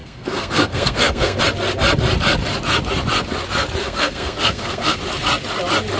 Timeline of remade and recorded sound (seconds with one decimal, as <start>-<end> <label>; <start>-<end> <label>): 0.0-1.4 remade; 1.4-3.8 recorded; 3.8-5.0 remade; 5.0-6.0 recorded